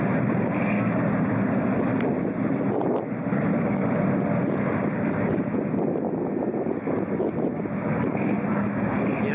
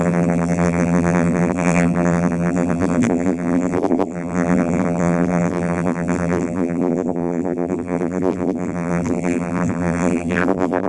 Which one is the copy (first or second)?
second